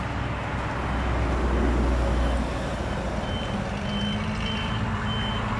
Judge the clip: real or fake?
real